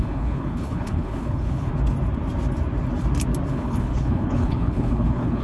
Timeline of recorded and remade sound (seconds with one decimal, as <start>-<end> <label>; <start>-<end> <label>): 0.0-1.7 remade; 1.7-3.5 recorded; 3.5-5.4 remade